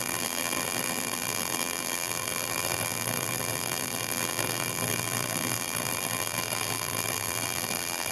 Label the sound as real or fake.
fake